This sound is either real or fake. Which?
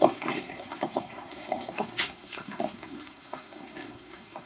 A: fake